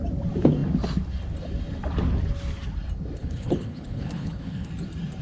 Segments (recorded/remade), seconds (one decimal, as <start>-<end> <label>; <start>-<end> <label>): 0.0-3.2 recorded; 3.2-4.7 remade; 4.7-5.2 recorded